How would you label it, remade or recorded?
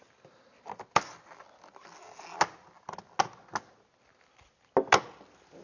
recorded